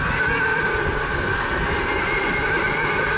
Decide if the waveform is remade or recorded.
recorded